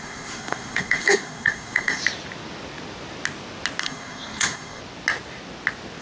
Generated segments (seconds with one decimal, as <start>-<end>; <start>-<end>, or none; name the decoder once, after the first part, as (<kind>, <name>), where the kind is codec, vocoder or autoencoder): 0.0-2.0 (codec, SNAC); 3.8-4.8